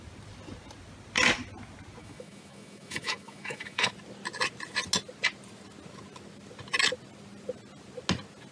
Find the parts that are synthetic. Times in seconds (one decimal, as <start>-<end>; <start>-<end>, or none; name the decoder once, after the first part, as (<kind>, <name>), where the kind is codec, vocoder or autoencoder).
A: 2.0-3.9 (autoencoder, DAC-VAE)